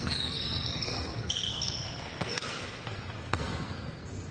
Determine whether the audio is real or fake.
fake